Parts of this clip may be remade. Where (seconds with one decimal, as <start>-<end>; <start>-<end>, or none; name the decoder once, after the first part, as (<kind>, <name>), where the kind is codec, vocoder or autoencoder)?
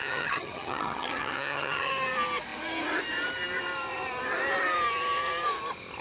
0.0-1.9 (vocoder, HiFi-GAN)